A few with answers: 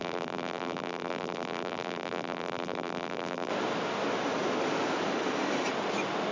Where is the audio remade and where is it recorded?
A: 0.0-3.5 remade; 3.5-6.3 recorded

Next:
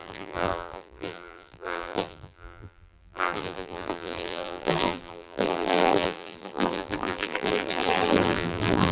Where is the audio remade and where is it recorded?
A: 0.0-8.9 remade

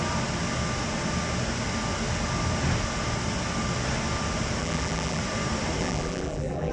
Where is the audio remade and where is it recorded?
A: 0.0-4.6 recorded; 4.6-5.2 remade; 5.2-5.8 recorded; 5.8-6.7 remade

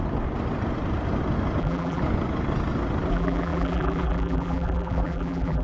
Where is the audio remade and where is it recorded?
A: 0.0-1.6 recorded; 1.6-2.0 remade; 2.0-3.1 recorded; 3.1-5.6 remade

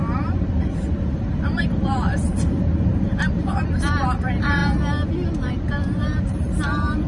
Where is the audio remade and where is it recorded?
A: 0.0-4.6 remade; 4.6-5.5 recorded; 5.5-7.1 remade

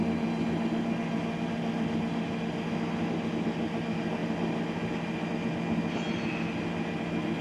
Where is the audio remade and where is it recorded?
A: 0.0-7.4 recorded

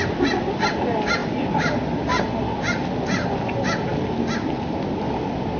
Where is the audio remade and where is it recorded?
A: 0.0-5.6 recorded

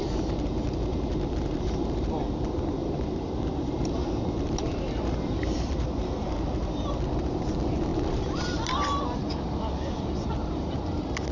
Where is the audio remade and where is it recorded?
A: 0.0-2.1 remade; 2.1-2.8 recorded; 2.8-6.9 remade; 6.9-7.9 recorded; 7.9-8.7 remade; 8.7-11.3 recorded